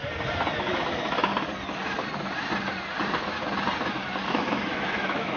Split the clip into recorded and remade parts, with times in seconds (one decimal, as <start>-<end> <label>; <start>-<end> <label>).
0.0-0.6 recorded; 0.6-1.3 remade; 1.3-4.3 recorded; 4.3-5.4 remade